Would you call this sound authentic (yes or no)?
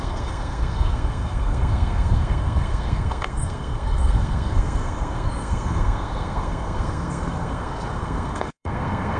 no